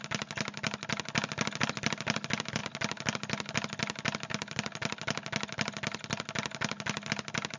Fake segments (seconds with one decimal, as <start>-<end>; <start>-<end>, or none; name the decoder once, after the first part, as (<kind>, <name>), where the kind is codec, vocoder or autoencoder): none